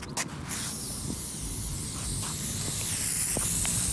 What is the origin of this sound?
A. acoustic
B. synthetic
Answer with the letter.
A